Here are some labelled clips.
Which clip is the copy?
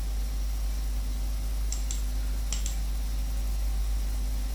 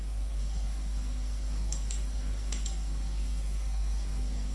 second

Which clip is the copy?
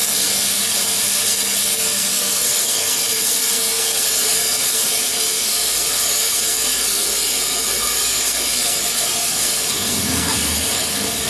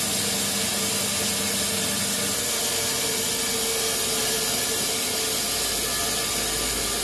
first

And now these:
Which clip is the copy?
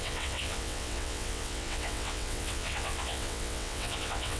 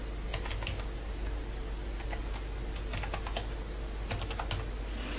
first